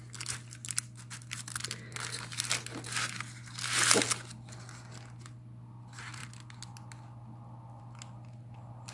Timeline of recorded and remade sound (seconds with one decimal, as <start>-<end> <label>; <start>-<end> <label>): 0.0-8.9 recorded